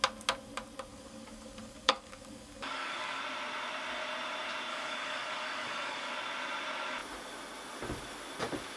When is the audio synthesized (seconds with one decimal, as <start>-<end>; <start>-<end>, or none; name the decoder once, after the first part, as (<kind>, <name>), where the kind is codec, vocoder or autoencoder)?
0.9-3.2 (codec, DAC); 4.7-6.1